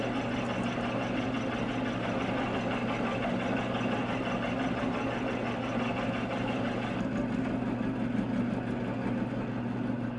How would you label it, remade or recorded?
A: recorded